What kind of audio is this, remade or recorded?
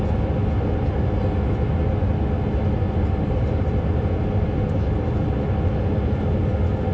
recorded